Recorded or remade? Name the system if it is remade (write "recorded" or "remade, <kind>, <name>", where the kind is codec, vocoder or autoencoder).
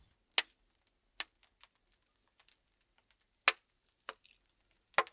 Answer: recorded